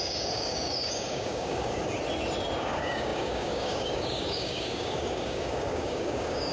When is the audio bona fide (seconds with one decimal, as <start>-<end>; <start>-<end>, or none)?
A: 1.8-2.6